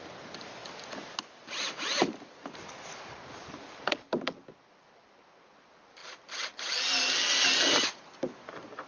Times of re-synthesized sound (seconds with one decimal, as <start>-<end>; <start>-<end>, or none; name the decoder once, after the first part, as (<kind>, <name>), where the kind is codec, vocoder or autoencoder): none